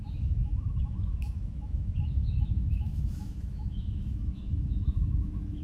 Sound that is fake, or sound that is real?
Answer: fake